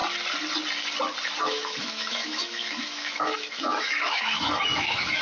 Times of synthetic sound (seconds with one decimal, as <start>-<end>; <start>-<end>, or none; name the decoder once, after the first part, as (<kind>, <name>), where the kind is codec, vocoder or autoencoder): 1.4-5.2 (autoencoder, DAC-VAE)